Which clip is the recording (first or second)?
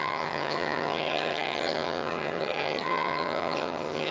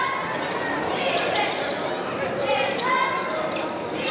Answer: second